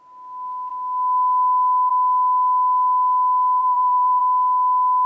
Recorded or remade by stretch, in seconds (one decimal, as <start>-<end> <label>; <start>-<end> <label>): 0.0-3.6 recorded; 3.6-4.2 remade; 4.2-5.1 recorded